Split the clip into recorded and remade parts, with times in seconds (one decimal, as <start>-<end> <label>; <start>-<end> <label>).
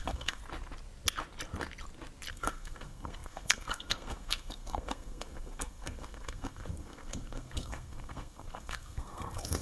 0.0-0.4 remade; 0.4-2.3 recorded; 2.3-9.6 remade